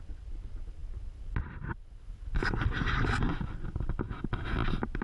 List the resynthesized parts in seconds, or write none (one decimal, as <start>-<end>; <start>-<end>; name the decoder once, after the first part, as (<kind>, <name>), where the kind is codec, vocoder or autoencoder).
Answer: none